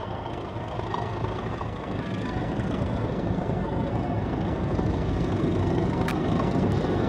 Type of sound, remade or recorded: remade